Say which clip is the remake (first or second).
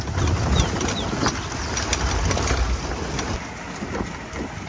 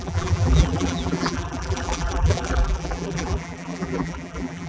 second